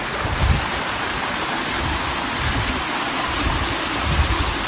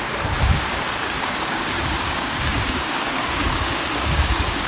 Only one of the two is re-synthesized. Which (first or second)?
second